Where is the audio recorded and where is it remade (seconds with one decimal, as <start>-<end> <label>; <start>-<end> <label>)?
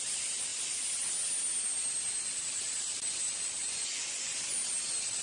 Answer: 0.0-3.6 recorded; 3.6-4.3 remade; 4.3-5.2 recorded